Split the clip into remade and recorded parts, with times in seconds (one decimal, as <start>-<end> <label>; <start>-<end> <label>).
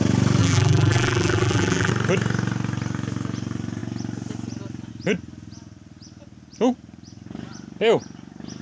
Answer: 0.0-0.4 recorded; 0.4-1.9 remade; 1.9-8.6 recorded